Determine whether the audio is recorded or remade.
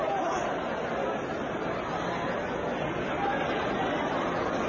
recorded